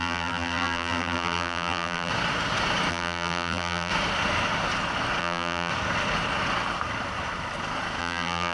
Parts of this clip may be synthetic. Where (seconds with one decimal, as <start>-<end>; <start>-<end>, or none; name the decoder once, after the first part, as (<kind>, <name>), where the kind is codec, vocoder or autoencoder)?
0.0-2.1 (vocoder, BigVGAN v2); 2.9-3.9; 5.2-5.7; 8.0-8.5